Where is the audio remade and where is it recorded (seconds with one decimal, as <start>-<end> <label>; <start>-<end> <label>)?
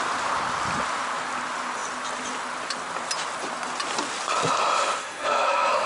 0.0-5.0 recorded; 5.0-5.9 remade